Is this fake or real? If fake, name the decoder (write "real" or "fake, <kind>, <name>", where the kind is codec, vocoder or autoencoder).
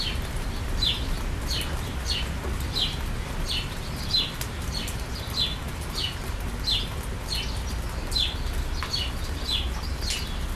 real